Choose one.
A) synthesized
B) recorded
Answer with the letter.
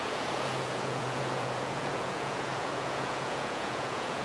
A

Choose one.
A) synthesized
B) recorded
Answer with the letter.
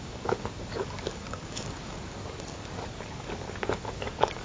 A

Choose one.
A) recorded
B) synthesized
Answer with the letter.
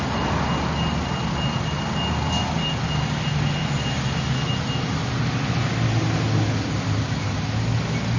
A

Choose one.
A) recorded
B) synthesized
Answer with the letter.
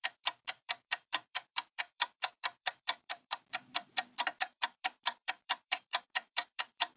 B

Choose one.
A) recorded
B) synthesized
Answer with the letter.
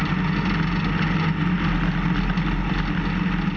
A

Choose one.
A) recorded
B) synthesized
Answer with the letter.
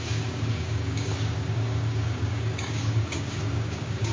B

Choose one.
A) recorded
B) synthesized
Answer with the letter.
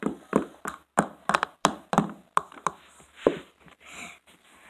A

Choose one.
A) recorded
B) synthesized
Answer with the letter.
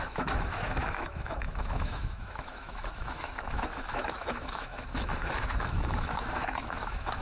B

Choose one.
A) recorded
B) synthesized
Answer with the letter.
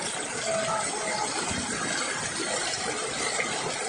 A